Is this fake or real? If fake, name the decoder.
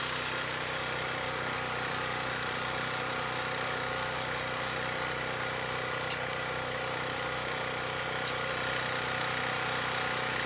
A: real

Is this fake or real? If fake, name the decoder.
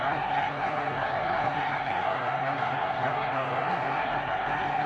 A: fake, codec, SNAC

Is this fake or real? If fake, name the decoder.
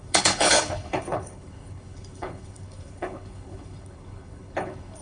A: fake, codec, HILCodec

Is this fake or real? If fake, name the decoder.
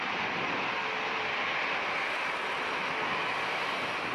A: real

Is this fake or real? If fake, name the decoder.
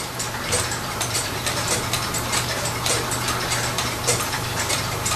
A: fake, vocoder, BigVGAN v2